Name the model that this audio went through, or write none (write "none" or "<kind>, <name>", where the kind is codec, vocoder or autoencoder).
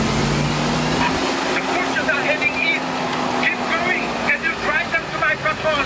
none